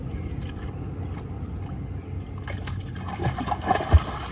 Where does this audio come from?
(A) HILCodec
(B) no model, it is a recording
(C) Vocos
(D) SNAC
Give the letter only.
B